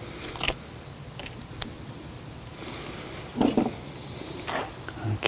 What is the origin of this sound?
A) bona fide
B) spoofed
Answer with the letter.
A